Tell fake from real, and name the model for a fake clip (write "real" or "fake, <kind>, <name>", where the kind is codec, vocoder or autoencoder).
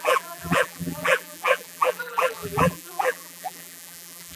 fake, vocoder, BigVGAN v2